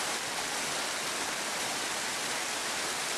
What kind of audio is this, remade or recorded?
recorded